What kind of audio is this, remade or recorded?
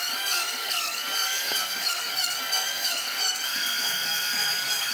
remade